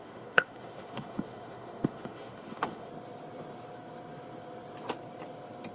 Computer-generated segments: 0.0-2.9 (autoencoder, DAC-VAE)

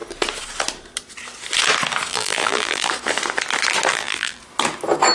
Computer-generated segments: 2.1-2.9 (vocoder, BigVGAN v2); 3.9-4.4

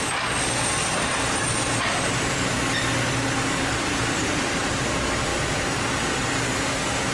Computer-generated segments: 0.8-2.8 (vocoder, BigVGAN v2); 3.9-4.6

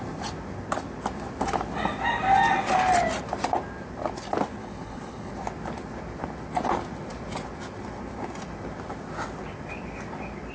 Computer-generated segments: 4.6-5.3 (codec, HILCodec)